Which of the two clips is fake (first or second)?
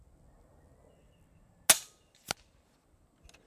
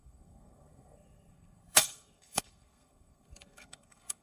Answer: second